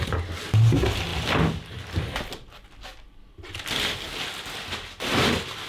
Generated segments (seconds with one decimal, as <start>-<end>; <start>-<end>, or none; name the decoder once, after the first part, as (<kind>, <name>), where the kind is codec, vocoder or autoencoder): none